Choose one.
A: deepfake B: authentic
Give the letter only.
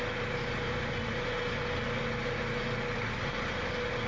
B